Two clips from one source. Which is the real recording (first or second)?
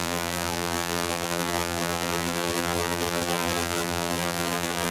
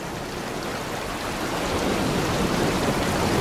second